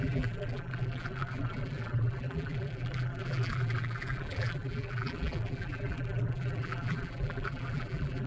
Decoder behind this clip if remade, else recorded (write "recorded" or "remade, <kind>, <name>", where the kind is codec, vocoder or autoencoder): remade, vocoder, BigVGAN v2